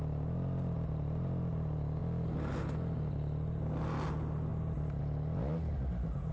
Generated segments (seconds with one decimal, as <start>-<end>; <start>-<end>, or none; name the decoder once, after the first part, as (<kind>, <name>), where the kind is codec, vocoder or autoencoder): 4.5-5.0 (vocoder, BigVGAN v2)